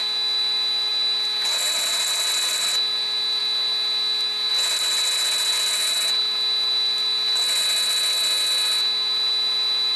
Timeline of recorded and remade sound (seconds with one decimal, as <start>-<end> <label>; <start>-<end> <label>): 0.0-10.0 recorded

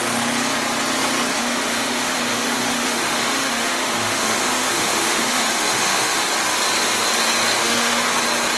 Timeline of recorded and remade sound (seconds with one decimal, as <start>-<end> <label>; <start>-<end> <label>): 0.0-1.4 recorded; 1.4-6.3 remade; 6.3-7.6 recorded; 7.6-8.1 remade; 8.1-8.6 recorded

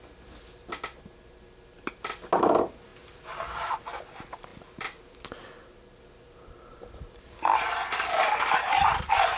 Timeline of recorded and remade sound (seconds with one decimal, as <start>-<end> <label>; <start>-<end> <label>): 0.0-9.4 recorded

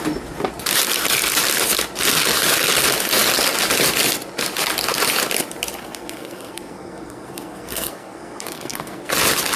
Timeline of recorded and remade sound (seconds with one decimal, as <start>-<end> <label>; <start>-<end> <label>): 0.0-5.8 recorded; 5.8-9.1 remade; 9.1-9.6 recorded

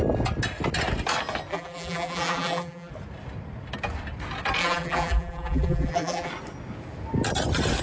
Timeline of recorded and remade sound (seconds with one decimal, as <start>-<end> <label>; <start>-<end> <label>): 0.0-1.5 recorded; 1.5-2.9 remade; 2.9-4.6 recorded; 4.6-6.3 remade; 6.3-7.8 recorded

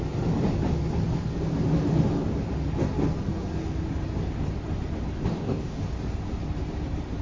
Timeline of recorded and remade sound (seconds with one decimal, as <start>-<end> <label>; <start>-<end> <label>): 0.0-5.3 recorded; 5.3-5.8 remade; 5.8-7.2 recorded

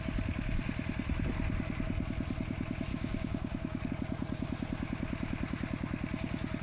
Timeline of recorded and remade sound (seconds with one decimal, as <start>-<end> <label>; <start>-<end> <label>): 0.0-2.9 recorded; 2.9-3.9 remade; 3.9-6.6 recorded